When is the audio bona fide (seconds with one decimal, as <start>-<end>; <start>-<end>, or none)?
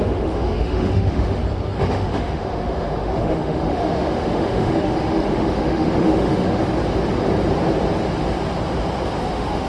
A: 1.4-1.9; 6.6-9.2